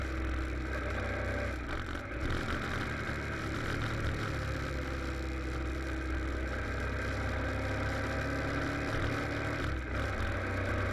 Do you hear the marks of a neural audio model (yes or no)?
no